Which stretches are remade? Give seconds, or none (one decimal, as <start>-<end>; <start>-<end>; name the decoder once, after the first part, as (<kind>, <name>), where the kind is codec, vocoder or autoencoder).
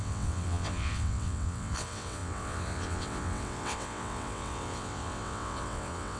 0.0-6.2 (vocoder, WaveNeXt)